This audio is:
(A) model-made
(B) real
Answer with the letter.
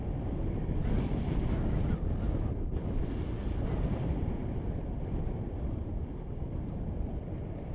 B